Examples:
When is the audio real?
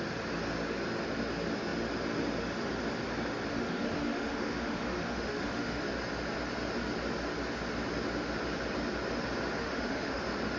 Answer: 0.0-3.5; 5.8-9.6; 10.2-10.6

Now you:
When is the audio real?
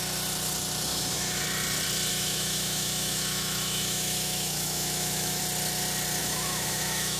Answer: 0.0-0.9; 1.4-2.1; 5.4-6.2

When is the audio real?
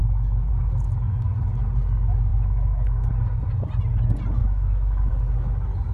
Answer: 0.5-2.3; 3.1-4.4; 5.1-5.9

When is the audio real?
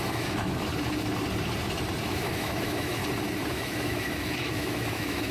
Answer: 0.7-2.0; 3.0-3.5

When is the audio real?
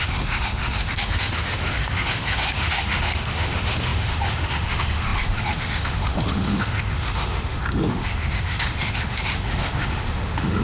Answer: none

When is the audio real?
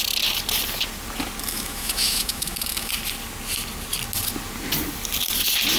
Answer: 0.0-1.5; 2.9-5.8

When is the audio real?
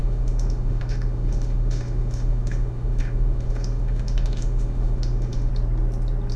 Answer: 5.5-6.4